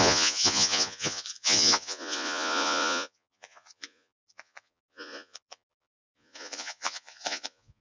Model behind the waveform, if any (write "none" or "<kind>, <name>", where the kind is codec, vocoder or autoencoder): vocoder, Vocos